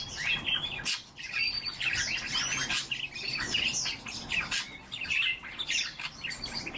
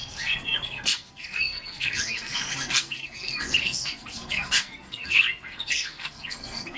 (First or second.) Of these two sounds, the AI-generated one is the second